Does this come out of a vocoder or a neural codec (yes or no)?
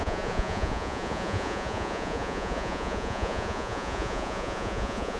yes